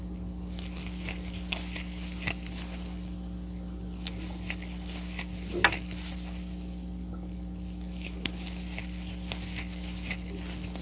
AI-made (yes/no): no